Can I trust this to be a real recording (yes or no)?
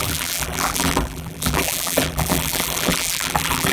no